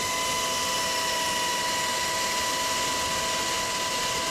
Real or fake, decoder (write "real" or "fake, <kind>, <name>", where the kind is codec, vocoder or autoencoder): real